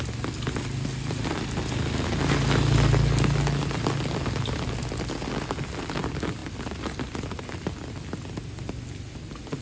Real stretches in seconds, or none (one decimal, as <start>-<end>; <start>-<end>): 0.0-9.6